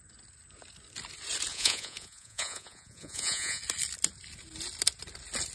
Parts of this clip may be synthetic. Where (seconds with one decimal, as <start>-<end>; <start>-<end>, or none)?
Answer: 1.5-3.6